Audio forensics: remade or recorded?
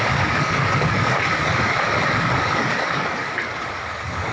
remade